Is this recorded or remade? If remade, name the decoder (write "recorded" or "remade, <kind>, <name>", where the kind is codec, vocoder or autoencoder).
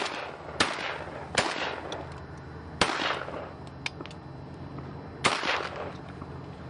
recorded